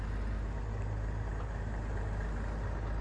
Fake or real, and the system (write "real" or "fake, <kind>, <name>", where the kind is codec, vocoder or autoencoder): real